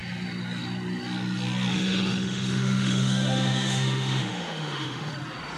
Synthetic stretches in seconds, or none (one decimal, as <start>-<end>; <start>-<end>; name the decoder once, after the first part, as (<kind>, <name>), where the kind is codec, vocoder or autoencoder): 1.7-5.1 (autoencoder, DAC-VAE)